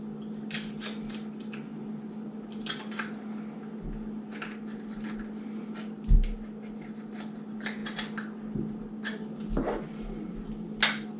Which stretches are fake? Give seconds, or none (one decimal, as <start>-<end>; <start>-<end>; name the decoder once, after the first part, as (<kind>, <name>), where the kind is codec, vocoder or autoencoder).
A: none